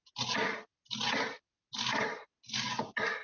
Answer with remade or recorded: recorded